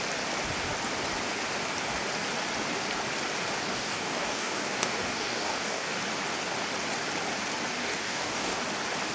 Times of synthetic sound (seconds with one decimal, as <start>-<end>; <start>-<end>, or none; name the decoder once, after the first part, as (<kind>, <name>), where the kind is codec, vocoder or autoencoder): 3.7-6.0 (codec, DAC); 7.8-8.6